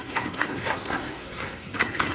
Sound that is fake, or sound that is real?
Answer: fake